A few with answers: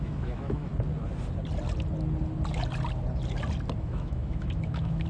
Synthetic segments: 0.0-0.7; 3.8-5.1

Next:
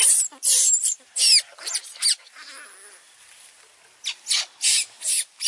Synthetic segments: none

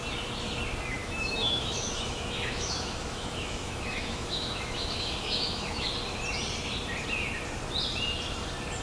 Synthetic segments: 1.0-5.9

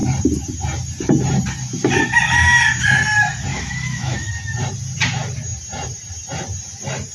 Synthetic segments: 3.5-4.3

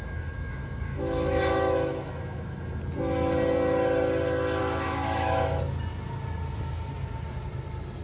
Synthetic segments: 0.0-2.8; 4.6-5.6

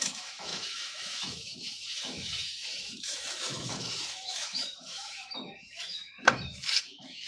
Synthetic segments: 0.0-7.3

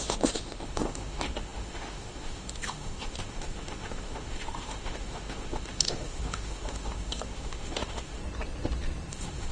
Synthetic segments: 0.0-8.2; 9.1-9.5

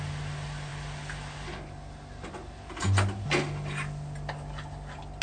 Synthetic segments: none